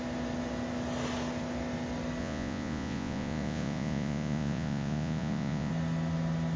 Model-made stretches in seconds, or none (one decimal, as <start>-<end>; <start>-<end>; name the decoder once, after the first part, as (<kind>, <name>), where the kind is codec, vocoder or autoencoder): 2.2-5.7 (vocoder, Vocos)